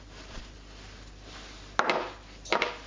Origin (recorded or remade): recorded